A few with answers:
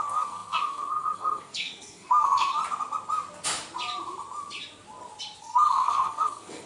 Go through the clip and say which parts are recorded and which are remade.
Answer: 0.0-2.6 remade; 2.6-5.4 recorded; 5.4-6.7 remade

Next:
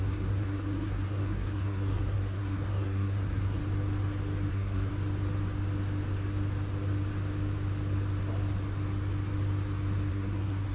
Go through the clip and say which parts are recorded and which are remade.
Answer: 0.0-3.6 remade; 3.6-4.5 recorded; 4.5-4.9 remade; 4.9-10.1 recorded; 10.1-10.7 remade

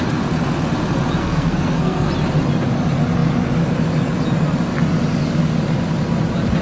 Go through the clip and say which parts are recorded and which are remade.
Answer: 0.0-1.2 recorded; 1.2-2.1 remade; 2.1-6.6 recorded

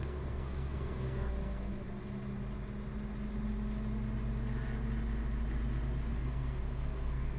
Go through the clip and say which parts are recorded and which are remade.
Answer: 0.0-1.7 remade; 1.7-6.1 recorded; 6.1-7.4 remade